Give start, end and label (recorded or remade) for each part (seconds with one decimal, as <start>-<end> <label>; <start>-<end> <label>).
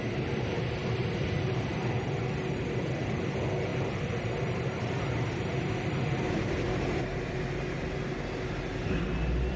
0.0-0.8 recorded; 0.8-3.3 remade; 3.3-3.7 recorded; 3.7-7.4 remade; 7.4-9.6 recorded